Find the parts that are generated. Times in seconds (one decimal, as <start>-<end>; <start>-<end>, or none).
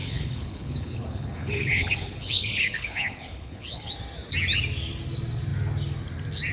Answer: 0.0-3.9